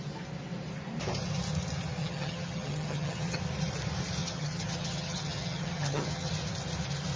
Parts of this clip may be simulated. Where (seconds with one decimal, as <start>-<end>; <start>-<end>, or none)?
2.0-3.4; 4.2-6.3